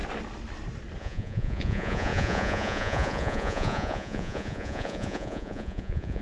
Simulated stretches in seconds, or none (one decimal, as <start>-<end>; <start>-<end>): 1.0-6.2